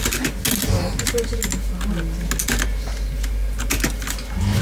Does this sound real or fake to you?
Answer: real